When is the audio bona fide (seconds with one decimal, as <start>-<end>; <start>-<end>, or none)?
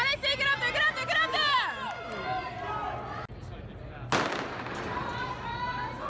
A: 0.0-6.1